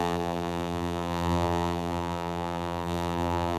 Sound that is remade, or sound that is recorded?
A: remade